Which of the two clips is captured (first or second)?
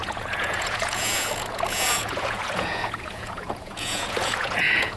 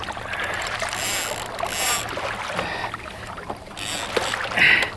second